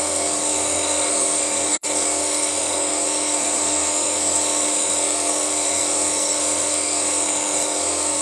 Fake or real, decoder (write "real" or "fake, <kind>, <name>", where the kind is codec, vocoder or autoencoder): fake, codec, SNAC